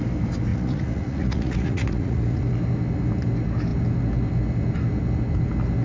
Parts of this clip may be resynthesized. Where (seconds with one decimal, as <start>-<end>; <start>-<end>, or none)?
0.5-2.4